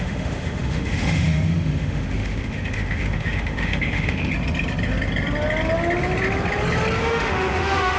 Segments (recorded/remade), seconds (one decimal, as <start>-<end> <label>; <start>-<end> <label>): 0.0-4.3 remade; 4.3-7.0 recorded; 7.0-8.0 remade